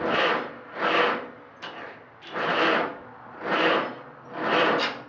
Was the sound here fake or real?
real